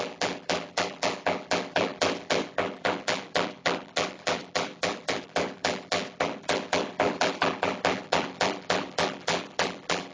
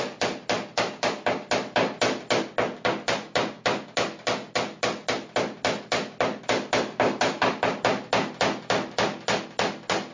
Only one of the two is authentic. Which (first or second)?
second